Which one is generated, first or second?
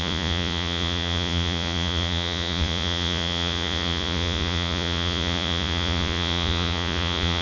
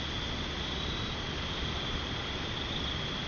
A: first